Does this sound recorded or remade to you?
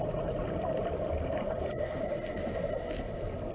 recorded